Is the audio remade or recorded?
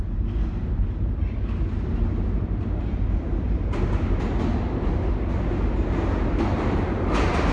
recorded